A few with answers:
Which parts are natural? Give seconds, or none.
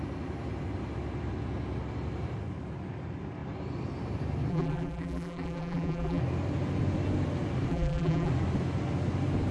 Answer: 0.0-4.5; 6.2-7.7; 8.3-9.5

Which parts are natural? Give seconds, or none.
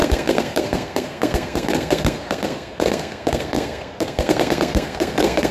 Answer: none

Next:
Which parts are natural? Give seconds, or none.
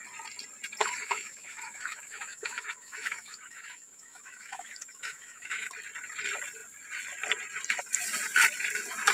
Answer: 0.0-0.8; 5.7-9.1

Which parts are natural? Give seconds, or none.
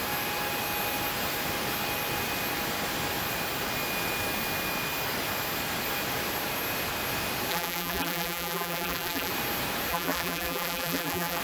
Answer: 0.0-7.5; 9.3-9.9